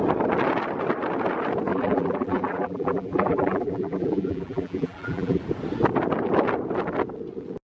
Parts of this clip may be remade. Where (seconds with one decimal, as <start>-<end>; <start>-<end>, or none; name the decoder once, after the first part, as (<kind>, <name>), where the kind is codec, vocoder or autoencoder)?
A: 1.7-5.4 (vocoder, BigVGAN v2)